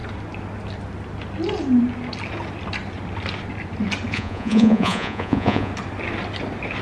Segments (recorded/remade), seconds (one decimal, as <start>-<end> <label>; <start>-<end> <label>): 0.0-4.1 recorded; 4.1-5.7 remade; 5.7-6.8 recorded